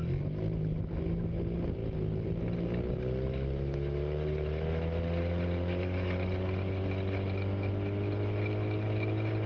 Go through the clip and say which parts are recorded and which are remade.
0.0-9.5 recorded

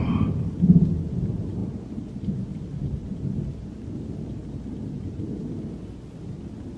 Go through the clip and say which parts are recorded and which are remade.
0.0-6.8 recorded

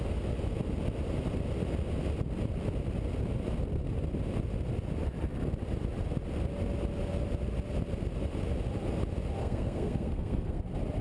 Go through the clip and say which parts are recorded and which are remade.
0.0-9.4 recorded; 9.4-10.6 remade; 10.6-11.0 recorded